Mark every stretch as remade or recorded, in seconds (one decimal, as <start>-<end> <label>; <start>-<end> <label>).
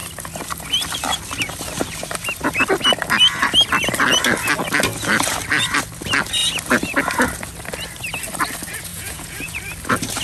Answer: 0.0-8.9 recorded; 8.9-9.6 remade; 9.6-10.2 recorded